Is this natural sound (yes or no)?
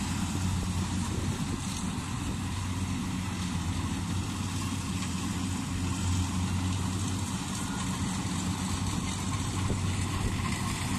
yes